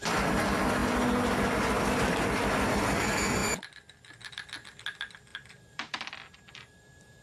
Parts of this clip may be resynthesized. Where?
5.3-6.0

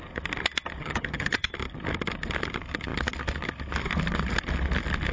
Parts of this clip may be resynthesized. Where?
0.8-1.5

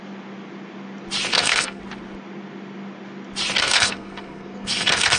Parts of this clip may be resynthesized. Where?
1.3-1.8; 3.6-5.2

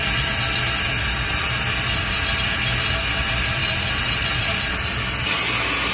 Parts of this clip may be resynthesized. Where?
3.6-4.7

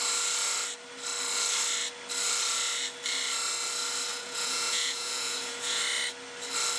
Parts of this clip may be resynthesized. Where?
4.1-5.8

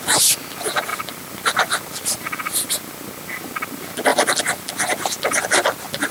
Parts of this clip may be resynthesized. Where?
0.9-2.7; 4.1-6.1

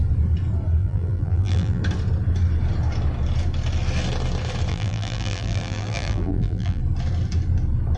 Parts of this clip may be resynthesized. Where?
0.8-1.8; 4.7-6.8